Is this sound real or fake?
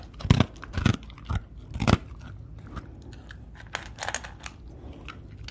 real